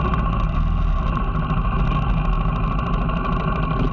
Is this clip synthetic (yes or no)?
no